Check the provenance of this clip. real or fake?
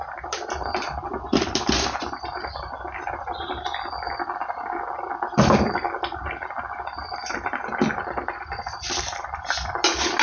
real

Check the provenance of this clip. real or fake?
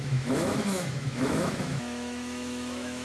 fake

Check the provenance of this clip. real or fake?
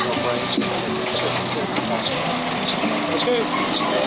real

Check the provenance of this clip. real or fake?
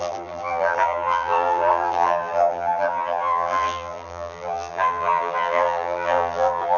fake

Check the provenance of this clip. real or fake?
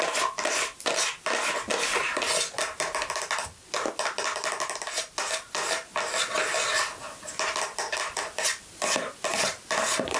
real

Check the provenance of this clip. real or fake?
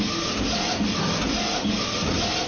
real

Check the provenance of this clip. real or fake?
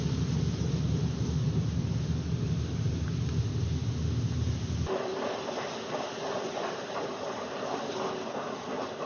real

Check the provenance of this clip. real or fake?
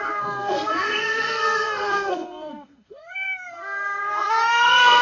fake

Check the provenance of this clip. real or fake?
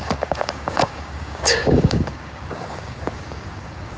fake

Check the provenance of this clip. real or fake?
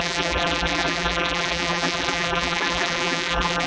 fake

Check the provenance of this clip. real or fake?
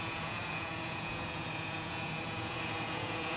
fake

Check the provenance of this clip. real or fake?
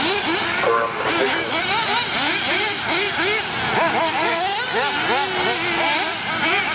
real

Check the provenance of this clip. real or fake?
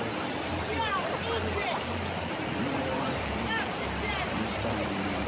fake